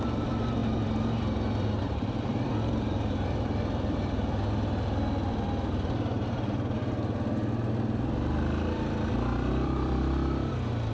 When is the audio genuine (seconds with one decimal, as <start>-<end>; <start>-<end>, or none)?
6.1-9.5

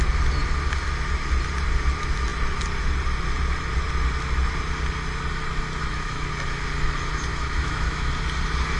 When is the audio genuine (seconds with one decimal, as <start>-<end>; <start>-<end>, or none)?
0.0-5.8; 6.3-7.3; 8.1-8.8